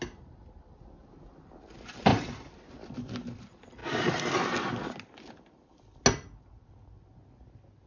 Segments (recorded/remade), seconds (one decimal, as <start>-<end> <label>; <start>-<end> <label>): 0.0-7.9 recorded